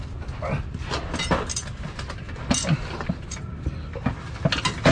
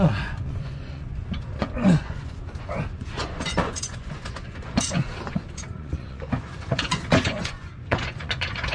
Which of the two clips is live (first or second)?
first